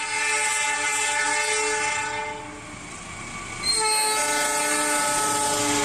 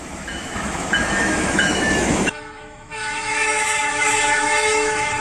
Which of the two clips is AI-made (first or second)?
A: second